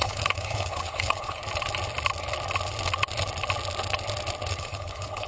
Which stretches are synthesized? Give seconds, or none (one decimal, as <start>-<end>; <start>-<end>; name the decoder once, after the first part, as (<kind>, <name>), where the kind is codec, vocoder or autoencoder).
0.0-1.4 (codec, HILCodec); 4.6-5.3